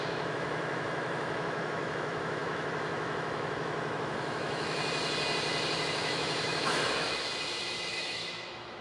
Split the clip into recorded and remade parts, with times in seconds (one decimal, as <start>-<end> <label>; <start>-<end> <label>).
0.0-4.8 remade; 4.8-5.8 recorded; 5.8-7.3 remade; 7.3-7.9 recorded; 7.9-8.8 remade